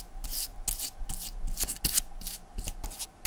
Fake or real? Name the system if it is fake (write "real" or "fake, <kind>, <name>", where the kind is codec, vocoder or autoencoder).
real